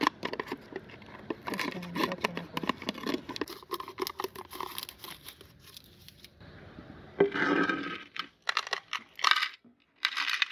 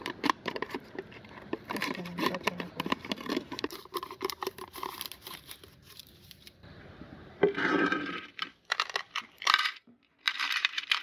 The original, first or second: first